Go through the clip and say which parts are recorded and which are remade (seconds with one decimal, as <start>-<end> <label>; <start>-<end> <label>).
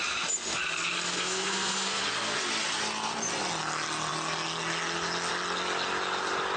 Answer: 0.0-1.1 recorded; 1.1-2.0 remade; 2.0-6.6 recorded